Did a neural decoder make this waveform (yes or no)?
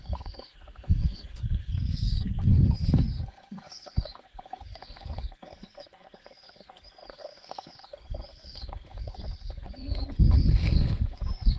yes